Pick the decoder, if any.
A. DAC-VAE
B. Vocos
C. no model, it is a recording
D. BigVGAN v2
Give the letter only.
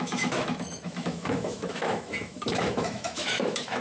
A